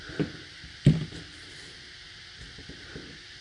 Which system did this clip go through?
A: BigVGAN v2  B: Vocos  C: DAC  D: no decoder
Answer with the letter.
A